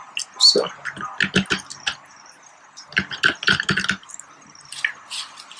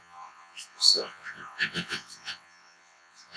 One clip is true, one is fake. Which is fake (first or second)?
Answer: second